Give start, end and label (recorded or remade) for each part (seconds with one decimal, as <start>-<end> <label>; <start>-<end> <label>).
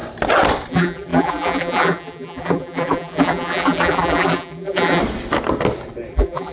0.0-0.7 recorded; 0.7-5.0 remade; 5.0-6.1 recorded; 6.1-6.5 remade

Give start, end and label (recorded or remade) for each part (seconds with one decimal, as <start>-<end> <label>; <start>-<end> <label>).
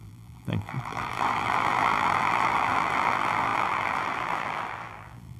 0.0-5.4 remade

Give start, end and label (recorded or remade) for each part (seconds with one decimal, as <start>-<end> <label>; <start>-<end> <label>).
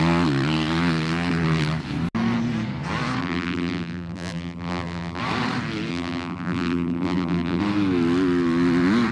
0.0-3.2 recorded; 3.2-5.2 remade; 5.2-5.9 recorded; 5.9-7.6 remade; 7.6-9.1 recorded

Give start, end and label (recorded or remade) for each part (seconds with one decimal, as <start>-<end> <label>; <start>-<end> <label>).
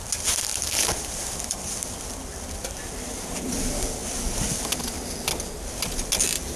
0.0-0.5 recorded; 0.5-1.6 remade; 1.6-6.6 recorded